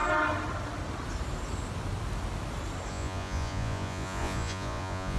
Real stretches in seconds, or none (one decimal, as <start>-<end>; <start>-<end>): 0.0-2.9